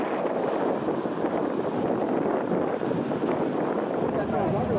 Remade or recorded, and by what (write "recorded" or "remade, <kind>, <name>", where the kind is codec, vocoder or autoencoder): recorded